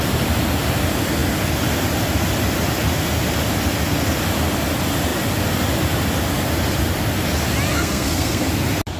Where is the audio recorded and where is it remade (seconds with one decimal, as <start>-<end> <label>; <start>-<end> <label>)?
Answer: 0.0-7.7 recorded; 7.7-8.5 remade; 8.5-9.0 recorded